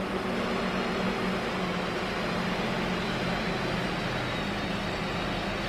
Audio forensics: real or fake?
real